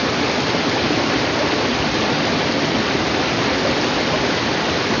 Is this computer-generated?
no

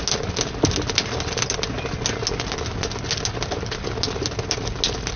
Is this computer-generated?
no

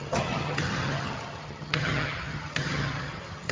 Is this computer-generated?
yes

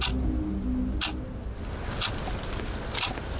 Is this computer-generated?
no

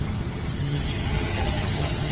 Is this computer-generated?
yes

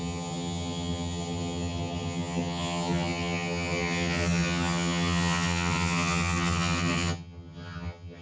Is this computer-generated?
yes